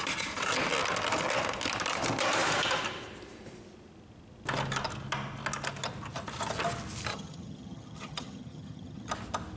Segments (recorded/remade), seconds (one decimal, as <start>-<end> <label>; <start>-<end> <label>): 0.0-7.1 recorded; 7.1-9.1 remade; 9.1-9.6 recorded